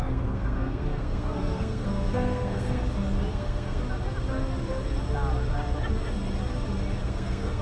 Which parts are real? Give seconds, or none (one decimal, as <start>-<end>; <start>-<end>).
2.8-3.3; 3.8-7.0